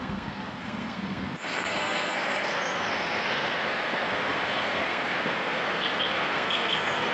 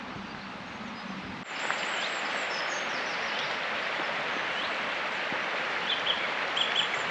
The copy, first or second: first